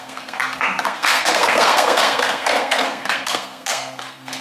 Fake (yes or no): yes